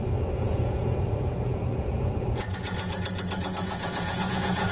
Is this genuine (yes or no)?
no